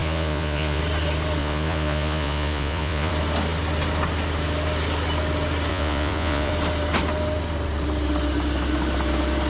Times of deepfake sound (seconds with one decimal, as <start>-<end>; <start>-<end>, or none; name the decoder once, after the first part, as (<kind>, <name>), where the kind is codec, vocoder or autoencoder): 0.0-0.8 (vocoder, Vocos); 1.4-3.1; 5.7-6.5

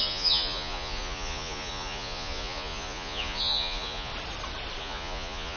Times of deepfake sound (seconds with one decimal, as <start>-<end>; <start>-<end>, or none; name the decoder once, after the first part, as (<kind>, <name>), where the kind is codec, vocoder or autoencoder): 0.0-4.1 (vocoder, Vocos); 4.8-5.6

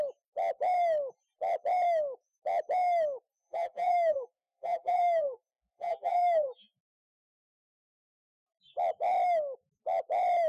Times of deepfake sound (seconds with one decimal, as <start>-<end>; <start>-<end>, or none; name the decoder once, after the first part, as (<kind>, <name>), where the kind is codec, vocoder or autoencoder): 3.4-8.5 (vocoder, BigVGAN v2)

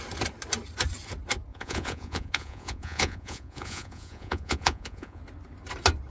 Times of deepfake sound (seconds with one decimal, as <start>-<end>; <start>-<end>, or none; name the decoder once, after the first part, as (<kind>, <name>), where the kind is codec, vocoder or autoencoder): 1.5-5.2 (vocoder, Vocos)

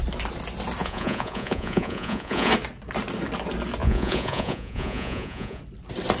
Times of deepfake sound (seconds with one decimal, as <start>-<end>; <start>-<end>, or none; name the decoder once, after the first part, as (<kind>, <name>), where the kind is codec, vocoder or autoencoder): 0.8-2.5 (vocoder, Vocos); 3.8-5.6

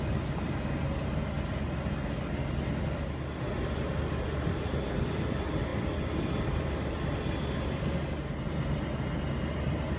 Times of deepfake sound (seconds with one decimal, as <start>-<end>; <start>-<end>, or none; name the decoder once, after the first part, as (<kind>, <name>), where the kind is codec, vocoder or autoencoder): none